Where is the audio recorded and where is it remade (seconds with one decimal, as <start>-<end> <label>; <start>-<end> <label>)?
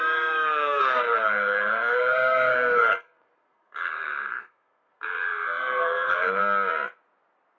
0.0-6.4 remade; 6.4-7.6 recorded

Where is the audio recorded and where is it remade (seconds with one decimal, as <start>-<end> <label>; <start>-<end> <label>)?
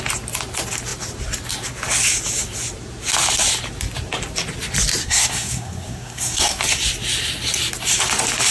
0.0-5.0 recorded; 5.0-6.6 remade; 6.6-8.5 recorded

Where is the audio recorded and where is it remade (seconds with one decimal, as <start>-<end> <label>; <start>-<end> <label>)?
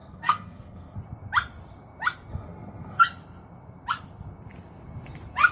0.0-1.0 remade; 1.0-2.3 recorded; 2.3-3.0 remade; 3.0-5.5 recorded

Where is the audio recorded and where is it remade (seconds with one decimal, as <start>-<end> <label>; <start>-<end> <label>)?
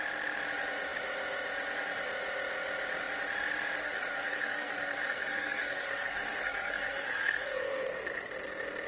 0.0-3.8 recorded; 3.8-8.3 remade; 8.3-8.9 recorded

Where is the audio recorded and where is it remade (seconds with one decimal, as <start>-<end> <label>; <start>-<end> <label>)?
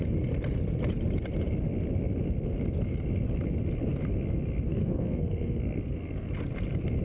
0.0-4.7 recorded; 4.7-6.3 remade; 6.3-7.0 recorded